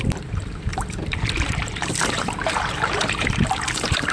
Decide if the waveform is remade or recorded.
remade